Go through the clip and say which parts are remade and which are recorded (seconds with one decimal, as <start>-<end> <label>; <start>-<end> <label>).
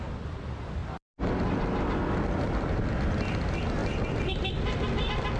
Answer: 0.0-5.4 recorded